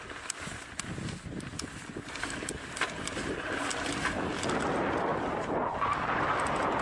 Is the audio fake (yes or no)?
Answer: no